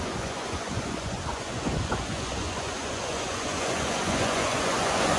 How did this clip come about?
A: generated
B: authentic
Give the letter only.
A